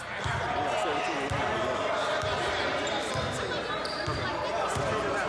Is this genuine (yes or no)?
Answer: yes